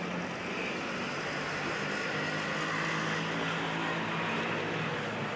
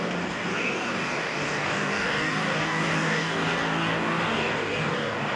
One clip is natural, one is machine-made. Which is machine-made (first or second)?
second